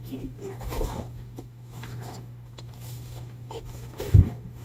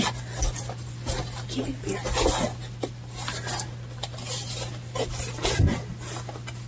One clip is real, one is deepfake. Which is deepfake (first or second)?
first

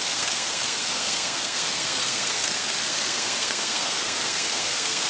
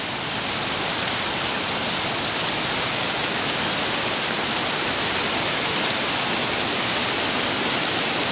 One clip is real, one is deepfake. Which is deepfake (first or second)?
first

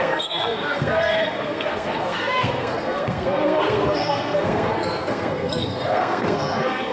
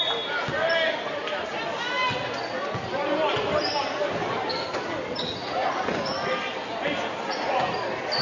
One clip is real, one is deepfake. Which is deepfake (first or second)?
first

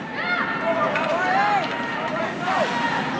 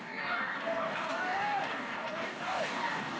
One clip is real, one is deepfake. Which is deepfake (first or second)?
second